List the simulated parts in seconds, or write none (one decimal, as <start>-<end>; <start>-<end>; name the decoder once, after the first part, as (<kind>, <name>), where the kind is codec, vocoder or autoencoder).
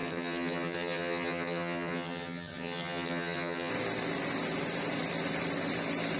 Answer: 0.0-3.7 (vocoder, HiFi-GAN)